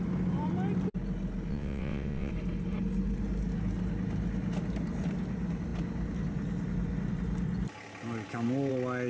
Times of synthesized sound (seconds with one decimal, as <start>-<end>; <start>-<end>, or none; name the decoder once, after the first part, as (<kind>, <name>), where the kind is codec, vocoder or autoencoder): 1.5-2.3 (vocoder, WaveNeXt)